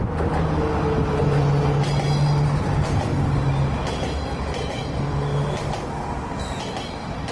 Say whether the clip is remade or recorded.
recorded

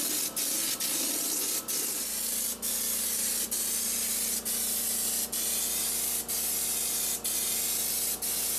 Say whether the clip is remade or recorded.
recorded